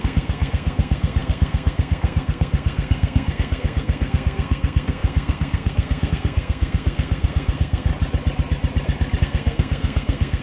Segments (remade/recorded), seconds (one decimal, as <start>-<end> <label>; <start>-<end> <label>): 0.0-7.9 remade; 7.9-9.2 recorded; 9.2-10.4 remade